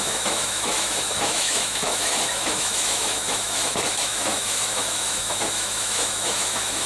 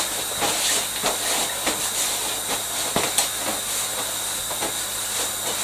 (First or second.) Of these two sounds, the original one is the second